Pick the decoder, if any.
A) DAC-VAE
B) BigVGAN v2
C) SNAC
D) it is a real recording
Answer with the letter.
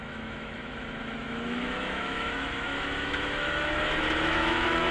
A